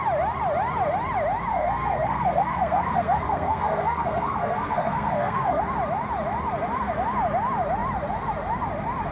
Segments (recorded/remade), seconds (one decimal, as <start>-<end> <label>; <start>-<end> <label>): 0.0-1.5 recorded; 1.5-5.6 remade; 5.6-9.1 recorded

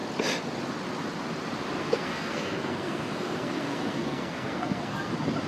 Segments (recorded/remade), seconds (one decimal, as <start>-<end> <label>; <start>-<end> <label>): 0.0-1.8 recorded; 1.8-5.1 remade; 5.1-5.5 recorded

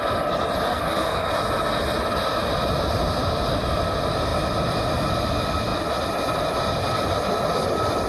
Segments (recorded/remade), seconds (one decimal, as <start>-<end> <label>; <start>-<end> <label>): 0.0-0.7 recorded; 0.7-1.3 remade; 1.3-8.1 recorded

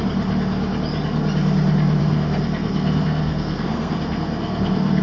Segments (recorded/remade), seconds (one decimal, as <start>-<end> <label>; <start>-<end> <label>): 0.0-2.0 recorded; 2.0-5.0 remade

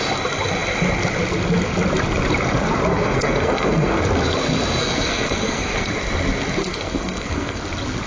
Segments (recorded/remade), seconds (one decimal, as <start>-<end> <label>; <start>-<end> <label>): 0.0-2.9 recorded; 2.9-4.0 remade; 4.0-4.8 recorded; 4.8-5.9 remade; 5.9-6.6 recorded; 6.6-7.6 remade; 7.6-8.1 recorded